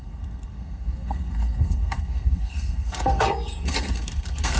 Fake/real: fake